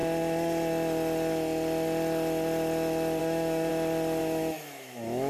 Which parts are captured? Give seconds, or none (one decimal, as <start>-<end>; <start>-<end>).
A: 0.0-3.2; 3.7-4.2